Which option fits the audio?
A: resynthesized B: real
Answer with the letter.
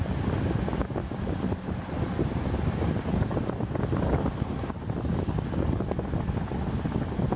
B